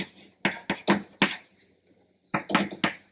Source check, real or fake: real